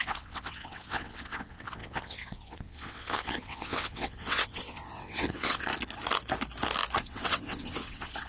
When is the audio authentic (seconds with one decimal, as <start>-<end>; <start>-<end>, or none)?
5.7-7.0